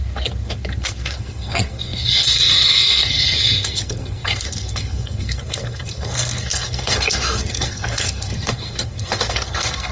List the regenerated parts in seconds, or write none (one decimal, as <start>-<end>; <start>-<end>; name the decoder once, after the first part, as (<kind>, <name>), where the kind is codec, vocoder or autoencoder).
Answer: 0.0-9.9 (codec, SNAC)